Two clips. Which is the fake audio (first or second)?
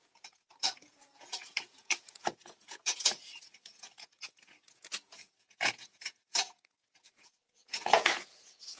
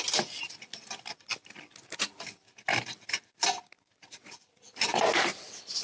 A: first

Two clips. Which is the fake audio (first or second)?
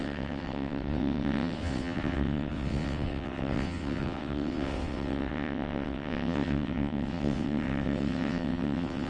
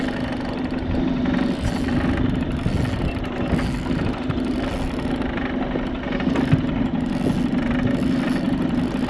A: first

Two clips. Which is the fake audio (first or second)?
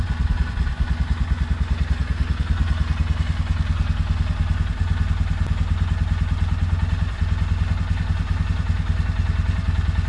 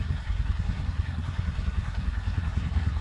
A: second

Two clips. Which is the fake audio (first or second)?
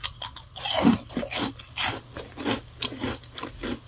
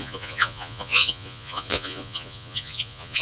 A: second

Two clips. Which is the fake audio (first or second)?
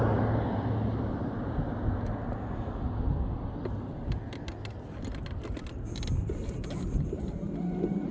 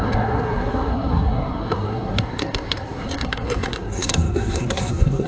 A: second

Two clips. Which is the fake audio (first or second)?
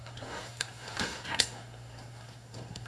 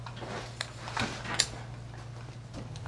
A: first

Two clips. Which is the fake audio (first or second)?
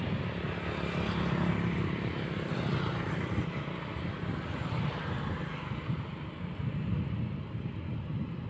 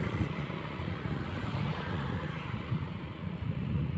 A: second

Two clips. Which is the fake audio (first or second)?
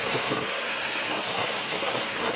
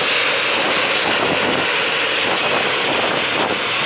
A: first